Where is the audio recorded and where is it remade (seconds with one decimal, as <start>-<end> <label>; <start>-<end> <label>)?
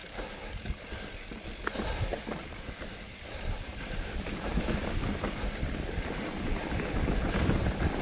0.0-0.9 remade; 0.9-2.1 recorded; 2.1-4.6 remade; 4.6-8.0 recorded